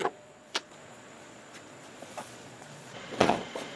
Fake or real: fake